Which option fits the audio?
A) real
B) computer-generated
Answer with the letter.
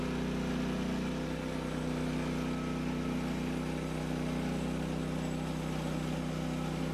A